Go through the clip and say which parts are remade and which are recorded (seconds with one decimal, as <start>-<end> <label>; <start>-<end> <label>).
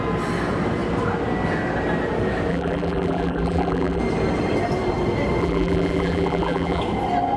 0.0-2.5 recorded; 2.5-4.0 remade; 4.0-5.4 recorded; 5.4-6.8 remade; 6.8-7.4 recorded